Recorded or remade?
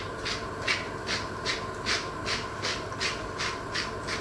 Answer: recorded